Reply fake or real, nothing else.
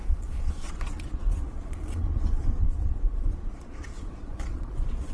fake